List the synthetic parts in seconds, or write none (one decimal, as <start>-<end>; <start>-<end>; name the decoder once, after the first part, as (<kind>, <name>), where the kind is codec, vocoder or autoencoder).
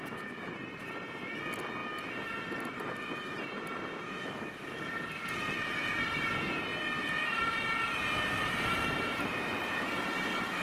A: none